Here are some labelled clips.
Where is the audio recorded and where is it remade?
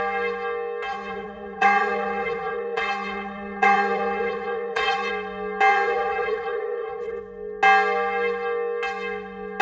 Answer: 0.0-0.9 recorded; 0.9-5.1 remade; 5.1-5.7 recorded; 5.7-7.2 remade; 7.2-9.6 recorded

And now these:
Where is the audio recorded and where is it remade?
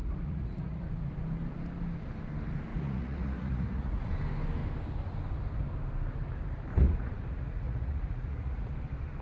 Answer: 0.0-0.8 remade; 0.8-2.7 recorded; 2.7-4.1 remade; 4.1-6.7 recorded; 6.7-8.7 remade; 8.7-9.2 recorded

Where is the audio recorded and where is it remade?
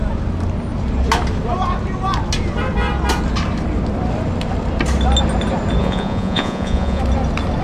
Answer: 0.0-5.8 recorded; 5.8-7.0 remade; 7.0-7.6 recorded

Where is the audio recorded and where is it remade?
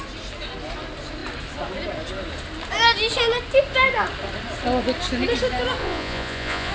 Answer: 0.0-5.8 recorded; 5.8-6.7 remade